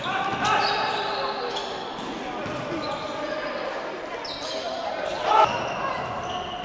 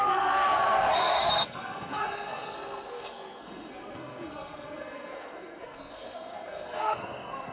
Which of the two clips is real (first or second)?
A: first